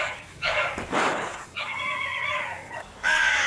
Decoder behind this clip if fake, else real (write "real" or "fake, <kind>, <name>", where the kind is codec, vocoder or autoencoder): fake, codec, DAC